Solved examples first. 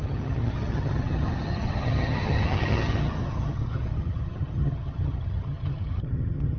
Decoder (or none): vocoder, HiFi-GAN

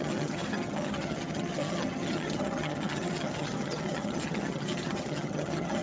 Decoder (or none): vocoder, HiFi-GAN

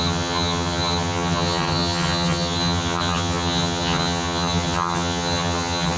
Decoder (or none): vocoder, HiFi-GAN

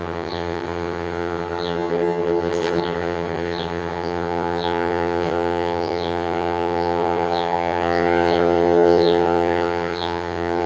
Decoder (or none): vocoder, HiFi-GAN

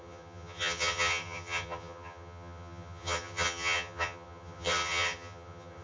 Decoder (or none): vocoder, HiFi-GAN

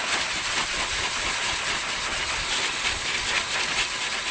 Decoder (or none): none